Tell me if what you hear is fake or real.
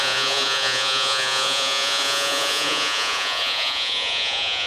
fake